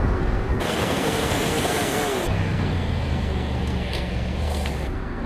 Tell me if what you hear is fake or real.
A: fake